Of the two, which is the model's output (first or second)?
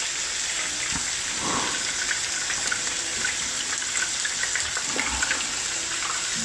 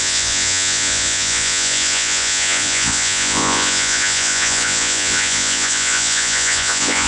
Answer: second